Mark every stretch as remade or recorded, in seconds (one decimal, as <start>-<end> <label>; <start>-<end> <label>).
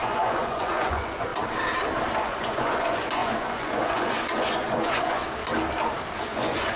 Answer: 0.0-1.3 remade; 1.3-2.2 recorded; 2.2-5.2 remade; 5.2-6.2 recorded; 6.2-6.8 remade